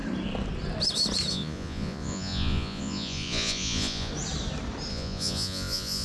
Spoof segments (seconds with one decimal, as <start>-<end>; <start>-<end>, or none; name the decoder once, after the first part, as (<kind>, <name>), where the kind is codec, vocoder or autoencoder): 1.3-4.1 (vocoder, Vocos); 4.9-6.0